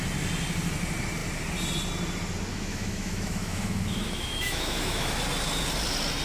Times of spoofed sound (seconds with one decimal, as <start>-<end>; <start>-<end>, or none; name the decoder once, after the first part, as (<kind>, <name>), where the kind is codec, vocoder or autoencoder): 2.5-5.2 (autoencoder, DAC-VAE)